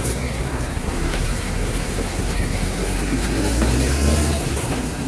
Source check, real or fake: fake